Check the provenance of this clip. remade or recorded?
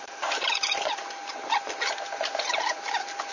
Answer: remade